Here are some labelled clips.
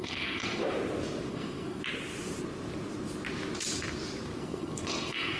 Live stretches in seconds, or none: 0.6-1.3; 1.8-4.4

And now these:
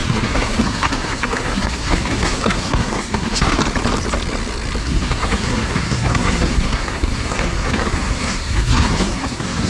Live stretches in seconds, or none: 3.6-4.8

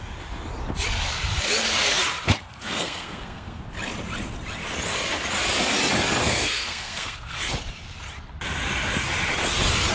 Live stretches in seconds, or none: 0.0-2.6; 3.6-6.2; 7.5-9.9

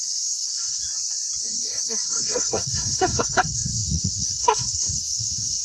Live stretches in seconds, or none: 0.8-1.4